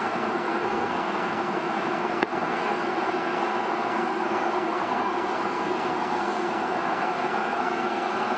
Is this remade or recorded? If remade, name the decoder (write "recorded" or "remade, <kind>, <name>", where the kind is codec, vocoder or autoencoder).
remade, codec, SNAC